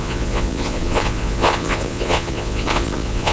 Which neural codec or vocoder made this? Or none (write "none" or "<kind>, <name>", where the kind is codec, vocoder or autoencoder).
vocoder, Vocos